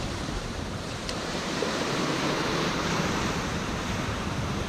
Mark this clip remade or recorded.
remade